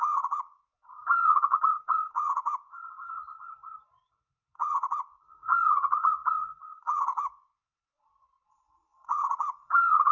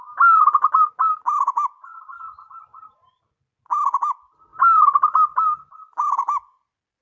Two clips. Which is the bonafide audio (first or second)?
second